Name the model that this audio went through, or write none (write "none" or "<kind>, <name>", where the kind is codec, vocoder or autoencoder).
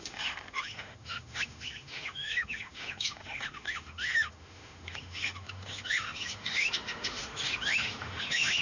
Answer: autoencoder, DAC-VAE